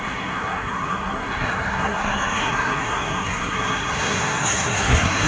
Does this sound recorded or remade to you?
remade